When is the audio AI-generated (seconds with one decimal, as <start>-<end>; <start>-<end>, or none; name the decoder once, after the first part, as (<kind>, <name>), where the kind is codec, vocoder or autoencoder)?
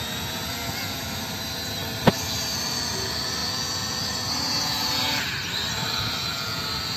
none